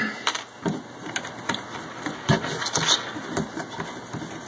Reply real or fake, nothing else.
real